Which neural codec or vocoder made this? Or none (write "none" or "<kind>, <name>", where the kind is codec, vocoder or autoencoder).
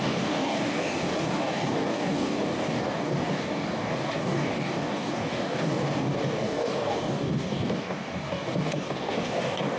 codec, DAC